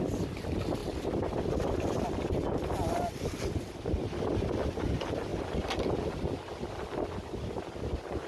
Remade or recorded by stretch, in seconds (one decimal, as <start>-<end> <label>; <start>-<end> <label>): 0.0-0.8 recorded; 0.8-3.3 remade; 3.3-8.3 recorded